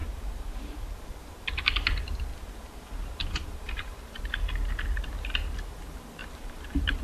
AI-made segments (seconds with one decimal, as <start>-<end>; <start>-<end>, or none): 0.0-1.6; 2.3-4.2; 6.2-7.0